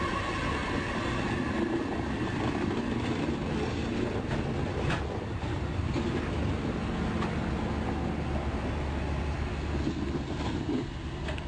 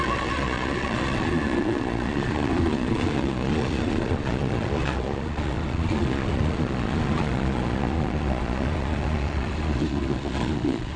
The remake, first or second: second